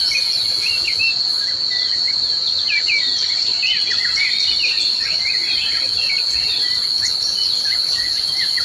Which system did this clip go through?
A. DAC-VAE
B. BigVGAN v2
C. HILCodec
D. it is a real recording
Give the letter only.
D